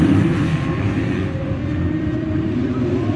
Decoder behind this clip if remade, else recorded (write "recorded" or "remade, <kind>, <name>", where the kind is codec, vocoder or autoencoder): remade, vocoder, BigVGAN v2